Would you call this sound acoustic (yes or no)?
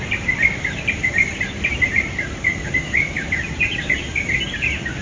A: no